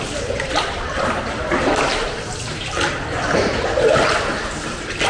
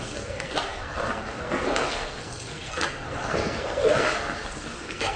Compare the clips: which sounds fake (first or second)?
second